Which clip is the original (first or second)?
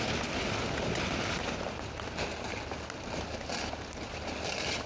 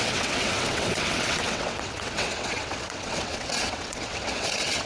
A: first